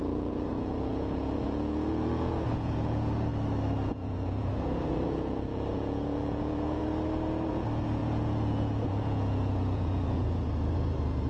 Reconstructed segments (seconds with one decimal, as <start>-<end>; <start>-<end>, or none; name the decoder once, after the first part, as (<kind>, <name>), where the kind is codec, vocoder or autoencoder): 0.0-3.3 (vocoder, Vocos); 3.9-6.8; 7.5-11.3

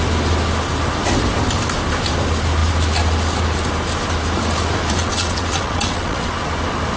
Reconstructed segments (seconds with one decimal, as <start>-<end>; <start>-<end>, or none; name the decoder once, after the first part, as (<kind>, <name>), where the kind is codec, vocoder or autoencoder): 5.0-6.3 (vocoder, WaveNeXt)

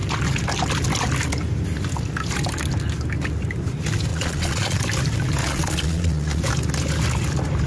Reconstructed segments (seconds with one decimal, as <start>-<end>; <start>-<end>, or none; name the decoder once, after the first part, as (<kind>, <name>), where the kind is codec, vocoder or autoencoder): 4.1-4.8 (vocoder, Vocos); 5.4-6.4

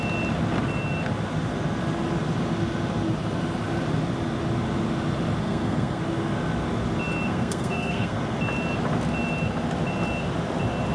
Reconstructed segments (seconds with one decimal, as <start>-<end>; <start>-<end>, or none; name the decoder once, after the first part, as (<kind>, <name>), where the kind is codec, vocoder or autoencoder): 5.4-6.0 (codec, SNAC); 7.3-8.2